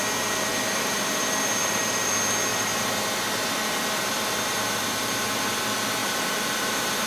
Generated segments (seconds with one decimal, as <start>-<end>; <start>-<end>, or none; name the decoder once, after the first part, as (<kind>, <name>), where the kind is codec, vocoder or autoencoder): 0.5-2.1 (vocoder, BigVGAN v2); 2.5-5.4; 6.0-7.1